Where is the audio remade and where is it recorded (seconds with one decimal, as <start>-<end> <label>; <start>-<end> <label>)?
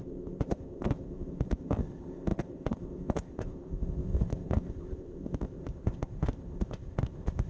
0.0-7.5 remade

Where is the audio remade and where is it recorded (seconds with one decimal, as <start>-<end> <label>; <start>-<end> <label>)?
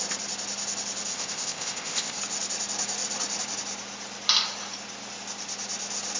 0.0-1.1 recorded; 1.1-2.2 remade; 2.2-6.2 recorded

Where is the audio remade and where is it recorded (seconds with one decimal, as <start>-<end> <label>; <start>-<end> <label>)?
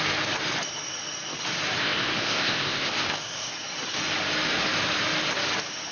0.0-1.8 recorded; 1.8-3.5 remade; 3.5-5.9 recorded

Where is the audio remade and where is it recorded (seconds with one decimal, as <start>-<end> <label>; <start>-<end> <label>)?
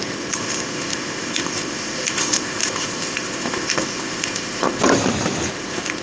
0.0-4.8 remade; 4.8-5.5 recorded; 5.5-6.0 remade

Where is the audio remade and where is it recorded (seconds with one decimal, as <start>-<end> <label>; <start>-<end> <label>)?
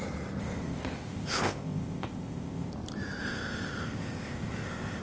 0.0-0.4 recorded; 0.4-2.7 remade; 2.7-3.2 recorded; 3.2-5.0 remade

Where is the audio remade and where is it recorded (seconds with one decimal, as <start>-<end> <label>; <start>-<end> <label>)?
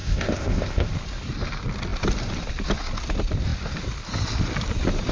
0.0-0.9 remade; 0.9-5.1 recorded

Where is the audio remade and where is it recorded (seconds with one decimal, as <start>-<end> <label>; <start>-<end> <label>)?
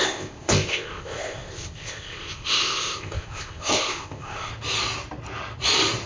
0.0-4.5 remade; 4.5-6.1 recorded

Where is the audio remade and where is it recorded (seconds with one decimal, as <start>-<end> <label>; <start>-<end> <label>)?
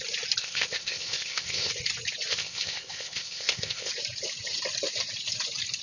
0.0-0.4 recorded; 0.4-1.7 remade; 1.7-2.3 recorded; 2.3-3.9 remade; 3.9-5.8 recorded